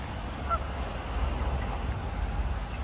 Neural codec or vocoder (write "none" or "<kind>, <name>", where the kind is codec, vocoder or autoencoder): none